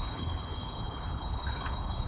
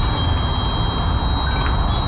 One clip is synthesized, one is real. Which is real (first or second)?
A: second